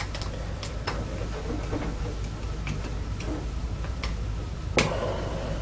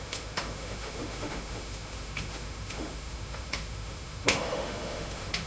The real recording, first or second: first